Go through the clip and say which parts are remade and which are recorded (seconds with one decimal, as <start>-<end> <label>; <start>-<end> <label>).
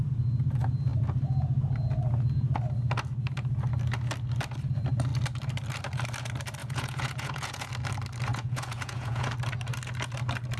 0.0-6.6 recorded; 6.6-7.7 remade; 7.7-8.3 recorded; 8.3-9.3 remade; 9.3-10.6 recorded